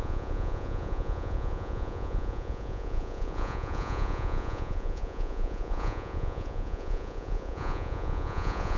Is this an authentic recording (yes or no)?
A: no